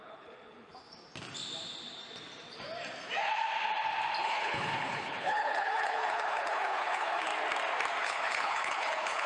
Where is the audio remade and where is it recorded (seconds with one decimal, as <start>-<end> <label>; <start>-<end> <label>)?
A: 0.0-0.7 remade; 0.7-4.2 recorded; 4.2-7.3 remade; 7.3-8.0 recorded; 8.0-9.3 remade